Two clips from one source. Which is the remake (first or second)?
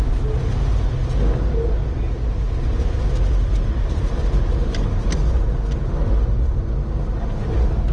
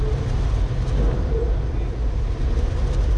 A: second